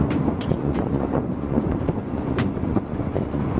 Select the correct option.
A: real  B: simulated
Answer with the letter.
B